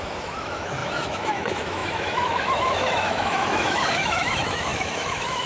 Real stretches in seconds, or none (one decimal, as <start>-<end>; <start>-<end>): none